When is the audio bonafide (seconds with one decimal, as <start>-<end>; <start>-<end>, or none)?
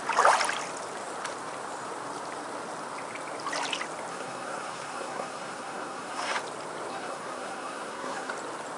0.0-4.1; 6.4-6.9; 8.3-8.8